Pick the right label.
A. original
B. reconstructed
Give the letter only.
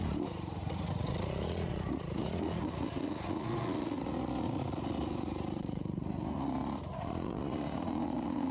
B